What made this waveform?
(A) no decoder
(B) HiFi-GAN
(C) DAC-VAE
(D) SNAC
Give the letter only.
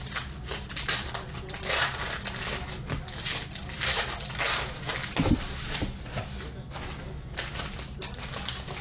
A